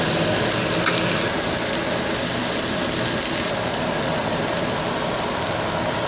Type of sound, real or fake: real